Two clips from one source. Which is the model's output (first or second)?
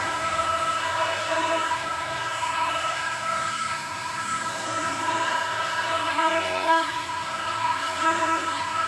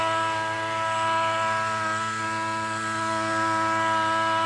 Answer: first